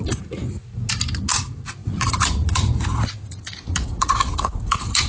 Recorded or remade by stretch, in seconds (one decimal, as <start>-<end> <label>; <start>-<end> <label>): 0.0-0.4 remade; 0.4-1.3 recorded; 1.3-5.1 remade